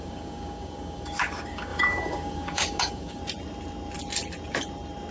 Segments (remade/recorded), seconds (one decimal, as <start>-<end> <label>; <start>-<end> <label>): 0.0-3.2 remade; 3.2-5.1 recorded